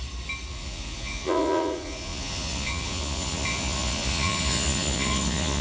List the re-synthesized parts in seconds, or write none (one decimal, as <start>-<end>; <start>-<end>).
0.5-5.6